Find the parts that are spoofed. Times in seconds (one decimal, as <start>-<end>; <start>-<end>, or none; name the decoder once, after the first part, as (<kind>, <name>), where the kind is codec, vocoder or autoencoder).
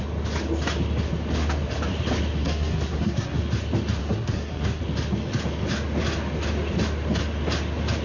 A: 2.4-3.4 (codec, SNAC); 4.0-4.8